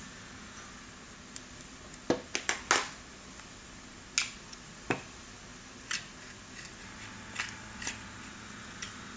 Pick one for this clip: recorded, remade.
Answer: recorded